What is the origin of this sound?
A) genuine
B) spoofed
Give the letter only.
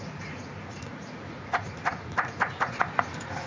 B